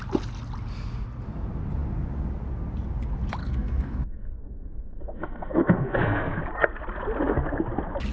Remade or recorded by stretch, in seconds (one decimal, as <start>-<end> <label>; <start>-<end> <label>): 0.0-3.4 recorded; 3.4-6.4 remade; 6.4-8.1 recorded